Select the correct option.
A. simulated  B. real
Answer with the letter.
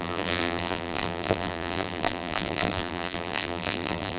A